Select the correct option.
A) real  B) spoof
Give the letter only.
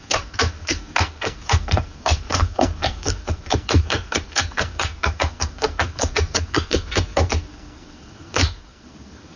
B